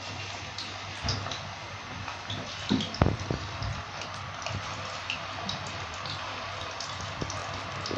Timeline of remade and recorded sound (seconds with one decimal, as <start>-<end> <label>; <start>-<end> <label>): 0.0-8.0 recorded